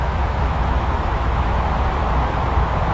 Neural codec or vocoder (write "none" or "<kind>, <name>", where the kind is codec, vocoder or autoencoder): autoencoder, DAC-VAE